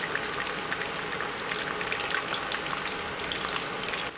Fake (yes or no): no